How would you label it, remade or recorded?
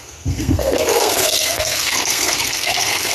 remade